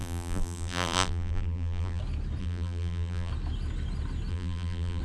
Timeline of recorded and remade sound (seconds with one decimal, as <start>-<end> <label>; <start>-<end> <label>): 0.0-2.0 remade; 2.0-2.4 recorded; 2.4-3.3 remade; 3.3-4.3 recorded; 4.3-5.0 remade